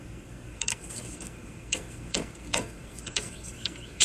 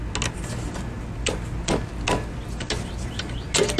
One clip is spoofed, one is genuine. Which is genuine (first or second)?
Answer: second